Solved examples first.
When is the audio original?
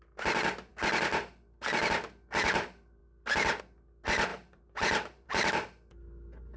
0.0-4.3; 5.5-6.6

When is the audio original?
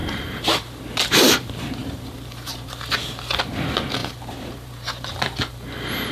0.8-1.8; 2.9-4.0; 5.0-6.1